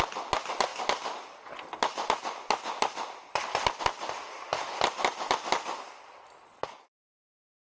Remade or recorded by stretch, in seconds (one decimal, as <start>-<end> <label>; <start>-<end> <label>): 0.0-7.6 recorded